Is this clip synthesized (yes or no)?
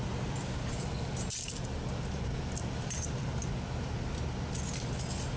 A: no